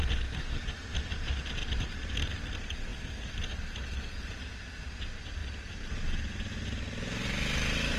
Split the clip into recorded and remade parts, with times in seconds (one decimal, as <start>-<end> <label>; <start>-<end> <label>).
0.0-8.0 recorded